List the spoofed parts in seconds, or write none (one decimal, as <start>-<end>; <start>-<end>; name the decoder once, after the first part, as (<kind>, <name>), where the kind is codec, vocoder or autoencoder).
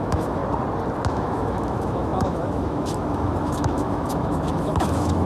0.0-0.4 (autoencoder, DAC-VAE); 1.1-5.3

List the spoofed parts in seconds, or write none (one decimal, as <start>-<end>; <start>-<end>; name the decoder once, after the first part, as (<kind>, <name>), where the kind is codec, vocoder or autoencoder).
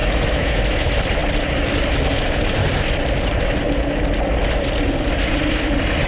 0.0-0.6 (autoencoder, DAC-VAE)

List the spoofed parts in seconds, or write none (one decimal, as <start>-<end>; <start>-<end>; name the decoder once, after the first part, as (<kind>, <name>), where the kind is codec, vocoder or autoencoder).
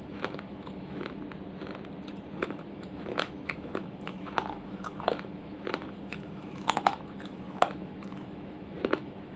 0.0-1.2 (autoencoder, DAC-VAE); 2.4-9.4